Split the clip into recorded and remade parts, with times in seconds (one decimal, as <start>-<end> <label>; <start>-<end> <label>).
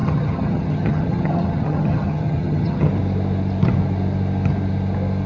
0.0-2.9 remade; 2.9-5.3 recorded